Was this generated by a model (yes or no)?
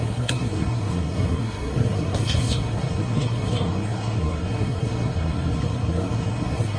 yes